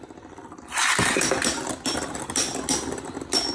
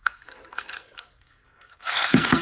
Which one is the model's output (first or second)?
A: second